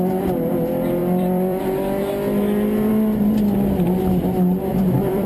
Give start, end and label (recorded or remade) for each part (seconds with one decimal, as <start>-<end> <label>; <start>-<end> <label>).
0.0-1.0 recorded; 1.0-1.6 remade; 1.6-4.7 recorded; 4.7-5.3 remade